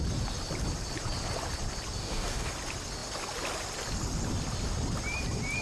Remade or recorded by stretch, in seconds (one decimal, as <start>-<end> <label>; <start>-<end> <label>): 0.0-2.0 recorded; 2.0-2.5 remade; 2.5-5.6 recorded